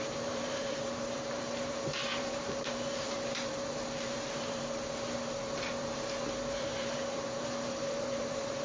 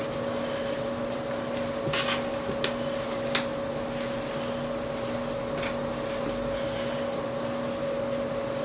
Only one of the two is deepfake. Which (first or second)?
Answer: first